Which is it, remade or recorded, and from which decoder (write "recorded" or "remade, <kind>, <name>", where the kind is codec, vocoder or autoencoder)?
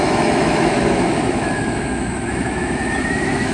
remade, autoencoder, DAC-VAE